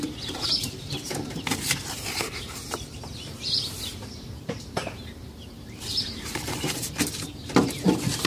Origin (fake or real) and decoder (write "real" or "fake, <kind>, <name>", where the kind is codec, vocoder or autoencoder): fake, vocoder, BigVGAN v2